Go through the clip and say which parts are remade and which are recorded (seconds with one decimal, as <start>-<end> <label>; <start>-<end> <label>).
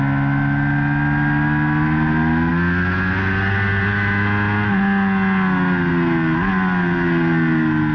0.0-7.9 recorded